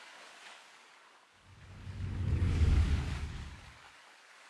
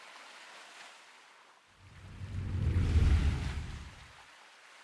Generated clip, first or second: first